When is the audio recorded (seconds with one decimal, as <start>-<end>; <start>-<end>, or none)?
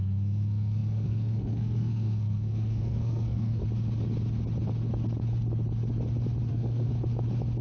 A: 3.6-6.5; 6.9-7.6